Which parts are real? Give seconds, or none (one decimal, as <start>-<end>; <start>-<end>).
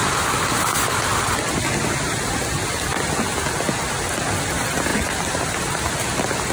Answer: 0.0-4.9; 5.9-6.5